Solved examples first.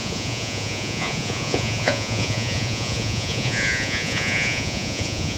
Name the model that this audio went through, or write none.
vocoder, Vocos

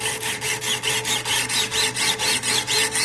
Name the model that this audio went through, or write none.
none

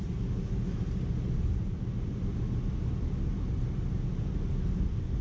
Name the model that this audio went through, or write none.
none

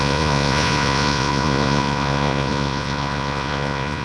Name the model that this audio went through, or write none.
vocoder, Vocos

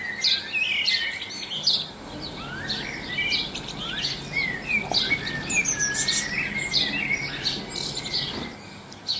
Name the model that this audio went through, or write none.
none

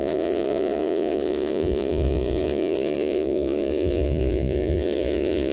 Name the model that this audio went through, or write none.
vocoder, Vocos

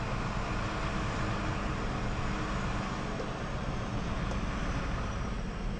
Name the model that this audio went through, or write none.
none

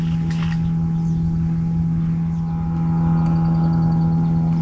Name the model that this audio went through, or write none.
none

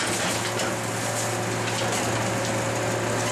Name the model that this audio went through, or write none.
none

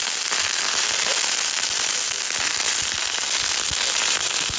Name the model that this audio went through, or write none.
none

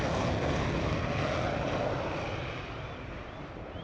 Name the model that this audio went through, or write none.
none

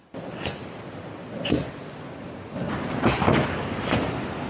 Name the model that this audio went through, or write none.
none